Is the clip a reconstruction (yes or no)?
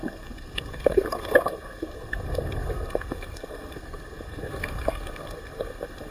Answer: yes